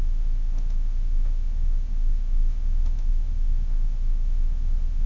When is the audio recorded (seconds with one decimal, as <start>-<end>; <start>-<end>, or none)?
none